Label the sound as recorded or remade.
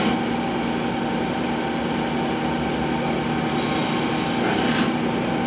recorded